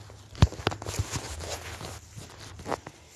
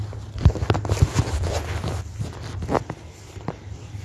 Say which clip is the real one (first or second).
first